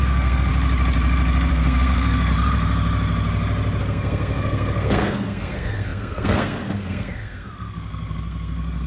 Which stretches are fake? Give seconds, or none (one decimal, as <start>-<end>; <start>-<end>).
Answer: 0.0-0.5; 1.5-2.3; 3.8-8.9